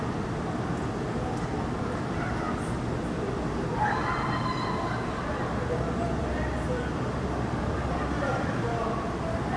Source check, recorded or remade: recorded